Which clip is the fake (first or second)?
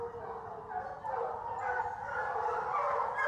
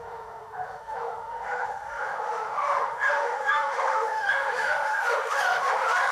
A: second